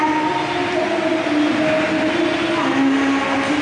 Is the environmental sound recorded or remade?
recorded